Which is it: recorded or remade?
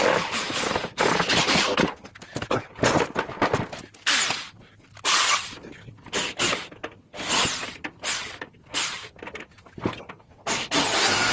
recorded